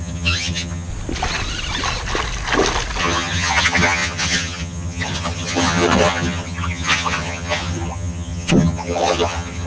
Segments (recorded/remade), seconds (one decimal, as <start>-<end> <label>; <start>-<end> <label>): 0.0-0.9 remade; 0.9-3.0 recorded; 3.0-9.7 remade